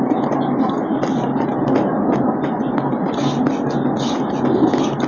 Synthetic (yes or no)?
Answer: no